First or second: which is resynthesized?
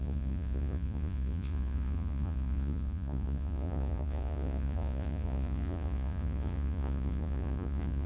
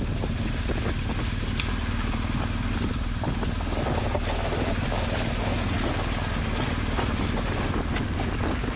first